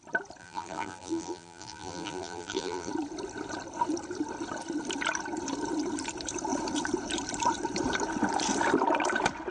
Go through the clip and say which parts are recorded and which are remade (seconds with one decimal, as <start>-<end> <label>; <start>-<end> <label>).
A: 0.0-0.4 recorded; 0.4-2.9 remade; 2.9-9.5 recorded